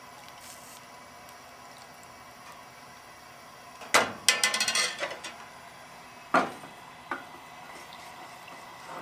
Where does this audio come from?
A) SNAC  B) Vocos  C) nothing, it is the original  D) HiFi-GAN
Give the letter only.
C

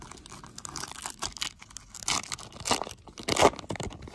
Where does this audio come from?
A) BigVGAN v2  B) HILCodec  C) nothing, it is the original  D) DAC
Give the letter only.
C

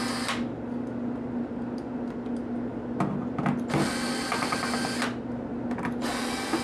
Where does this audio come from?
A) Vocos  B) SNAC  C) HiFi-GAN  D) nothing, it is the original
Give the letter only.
D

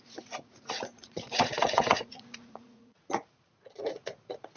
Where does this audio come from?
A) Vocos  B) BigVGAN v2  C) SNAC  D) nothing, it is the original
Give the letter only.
A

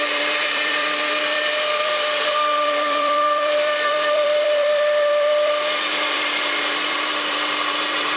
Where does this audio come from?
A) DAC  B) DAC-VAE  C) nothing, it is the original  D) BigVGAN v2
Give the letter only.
D